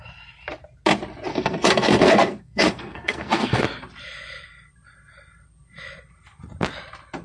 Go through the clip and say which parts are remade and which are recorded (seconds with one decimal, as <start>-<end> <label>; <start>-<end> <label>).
0.0-1.3 recorded; 1.3-3.6 remade; 3.6-7.2 recorded